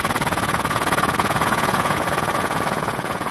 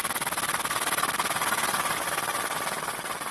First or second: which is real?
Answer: second